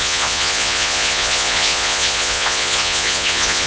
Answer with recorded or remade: remade